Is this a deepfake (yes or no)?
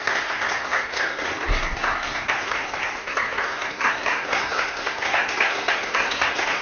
yes